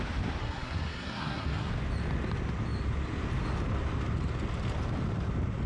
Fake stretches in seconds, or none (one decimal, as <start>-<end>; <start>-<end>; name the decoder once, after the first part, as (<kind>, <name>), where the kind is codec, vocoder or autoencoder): 0.4-1.7 (codec, SNAC)